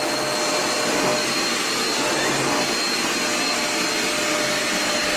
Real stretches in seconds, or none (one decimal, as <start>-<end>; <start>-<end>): 0.0-5.2